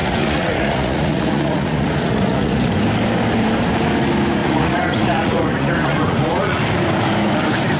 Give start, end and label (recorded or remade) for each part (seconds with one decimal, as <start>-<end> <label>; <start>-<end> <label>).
0.0-2.7 remade; 2.7-4.4 recorded; 4.4-6.6 remade; 6.6-7.8 recorded